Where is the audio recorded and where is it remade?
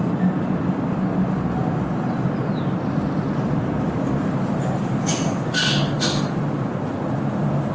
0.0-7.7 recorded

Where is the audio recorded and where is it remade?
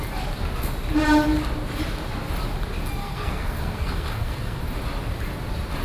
0.0-3.0 recorded; 3.0-4.6 remade; 4.6-5.8 recorded